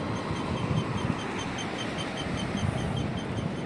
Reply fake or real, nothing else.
real